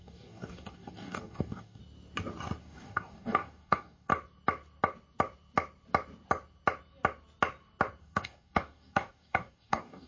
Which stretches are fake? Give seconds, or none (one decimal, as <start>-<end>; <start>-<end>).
0.0-1.8; 2.6-4.1; 8.0-10.1